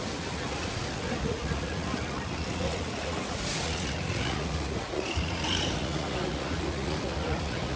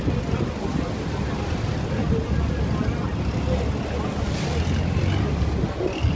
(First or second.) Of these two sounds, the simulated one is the first